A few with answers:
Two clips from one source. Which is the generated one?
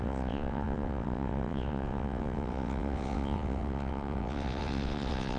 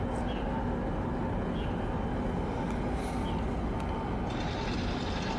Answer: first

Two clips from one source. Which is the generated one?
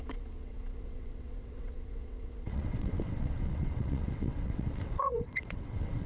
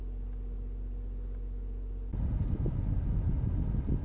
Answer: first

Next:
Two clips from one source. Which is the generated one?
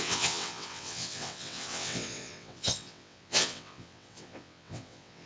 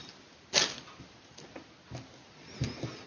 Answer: first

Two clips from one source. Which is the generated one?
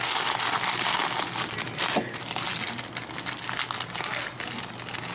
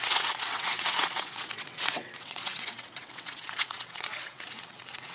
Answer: second